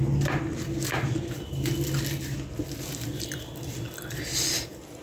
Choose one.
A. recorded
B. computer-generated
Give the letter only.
A